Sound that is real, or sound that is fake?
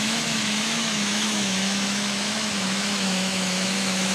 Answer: fake